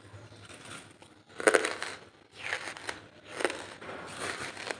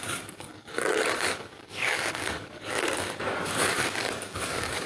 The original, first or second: first